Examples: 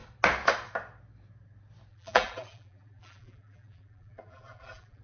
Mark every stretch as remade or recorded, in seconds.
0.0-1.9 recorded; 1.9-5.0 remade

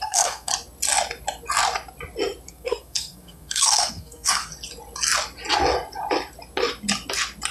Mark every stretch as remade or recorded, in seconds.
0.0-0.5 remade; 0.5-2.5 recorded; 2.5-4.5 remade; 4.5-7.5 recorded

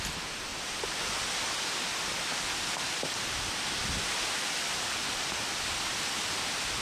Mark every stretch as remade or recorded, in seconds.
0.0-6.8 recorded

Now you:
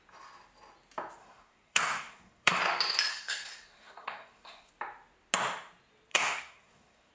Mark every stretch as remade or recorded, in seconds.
0.0-1.2 recorded; 1.2-2.6 remade; 2.6-3.1 recorded; 3.1-4.7 remade; 4.7-6.1 recorded; 6.1-7.1 remade